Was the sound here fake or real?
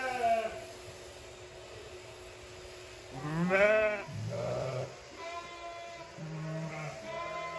real